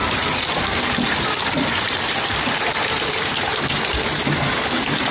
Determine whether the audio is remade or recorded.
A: remade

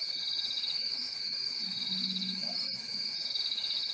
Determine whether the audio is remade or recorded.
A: remade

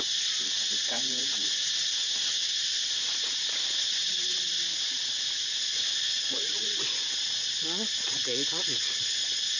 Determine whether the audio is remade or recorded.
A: remade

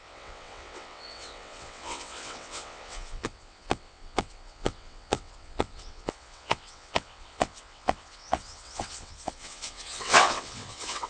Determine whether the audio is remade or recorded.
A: remade